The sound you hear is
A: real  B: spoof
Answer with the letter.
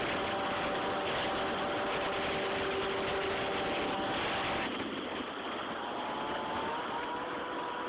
A